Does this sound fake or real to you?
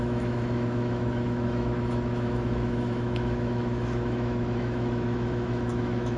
fake